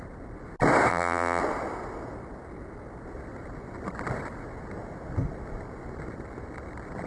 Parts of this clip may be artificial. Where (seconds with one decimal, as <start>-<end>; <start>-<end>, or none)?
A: 0.9-1.4